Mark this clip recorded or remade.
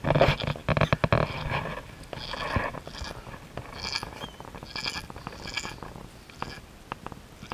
recorded